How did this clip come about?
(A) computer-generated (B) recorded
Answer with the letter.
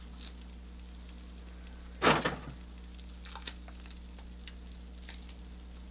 B